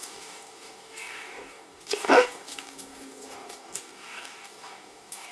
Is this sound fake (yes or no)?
yes